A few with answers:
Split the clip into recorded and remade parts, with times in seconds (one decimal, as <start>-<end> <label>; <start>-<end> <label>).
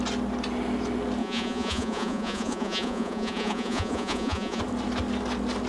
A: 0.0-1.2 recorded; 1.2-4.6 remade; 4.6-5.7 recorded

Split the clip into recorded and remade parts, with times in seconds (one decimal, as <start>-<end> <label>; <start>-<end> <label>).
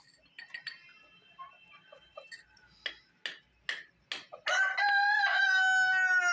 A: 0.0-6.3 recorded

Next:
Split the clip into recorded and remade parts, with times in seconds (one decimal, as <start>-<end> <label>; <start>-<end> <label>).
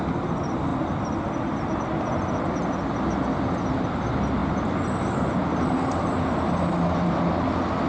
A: 0.0-7.9 recorded